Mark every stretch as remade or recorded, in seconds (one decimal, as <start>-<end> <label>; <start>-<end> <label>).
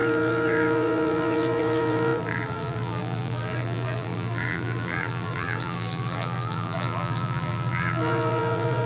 0.0-8.9 remade